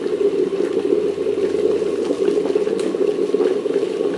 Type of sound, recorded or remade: recorded